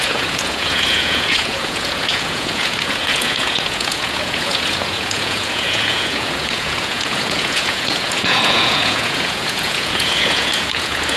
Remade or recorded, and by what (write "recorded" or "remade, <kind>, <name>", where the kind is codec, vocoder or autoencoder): remade, vocoder, Vocos